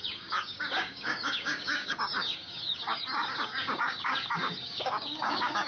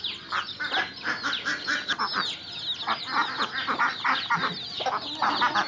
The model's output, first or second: first